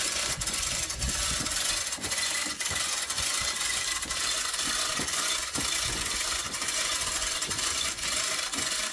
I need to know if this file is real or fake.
fake